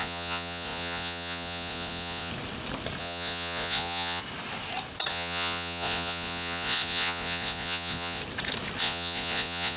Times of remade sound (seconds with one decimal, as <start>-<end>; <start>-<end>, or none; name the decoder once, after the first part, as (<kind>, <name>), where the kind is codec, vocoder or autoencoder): 0.0-2.3 (vocoder, Vocos); 3.0-4.2; 5.1-8.2; 8.8-9.8